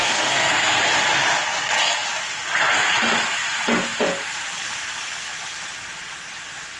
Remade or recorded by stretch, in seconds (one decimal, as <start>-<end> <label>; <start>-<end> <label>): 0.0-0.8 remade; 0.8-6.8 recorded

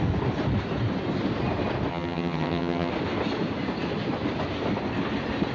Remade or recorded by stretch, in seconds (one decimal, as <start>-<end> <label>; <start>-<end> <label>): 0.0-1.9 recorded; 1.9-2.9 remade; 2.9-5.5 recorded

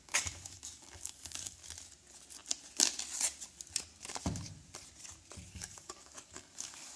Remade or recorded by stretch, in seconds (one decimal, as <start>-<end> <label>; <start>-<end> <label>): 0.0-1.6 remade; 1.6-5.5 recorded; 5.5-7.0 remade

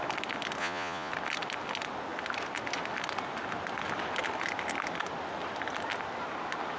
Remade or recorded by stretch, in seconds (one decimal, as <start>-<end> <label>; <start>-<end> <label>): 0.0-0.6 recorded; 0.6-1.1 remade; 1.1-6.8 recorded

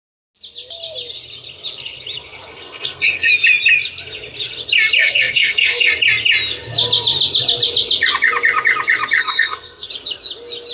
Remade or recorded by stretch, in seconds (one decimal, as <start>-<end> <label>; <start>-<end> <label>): 0.0-2.5 recorded; 2.5-3.3 remade; 3.3-5.0 recorded; 5.0-5.9 remade; 5.9-9.2 recorded; 9.2-9.9 remade; 9.9-10.7 recorded

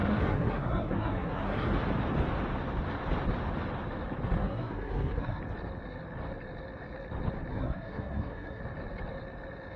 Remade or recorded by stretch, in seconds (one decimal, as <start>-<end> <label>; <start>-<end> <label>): 0.0-1.7 remade; 1.7-4.4 recorded; 4.4-5.4 remade; 5.4-7.5 recorded; 7.5-8.6 remade; 8.6-9.8 recorded